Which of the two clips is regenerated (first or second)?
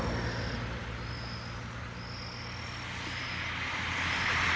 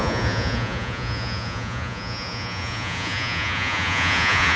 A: second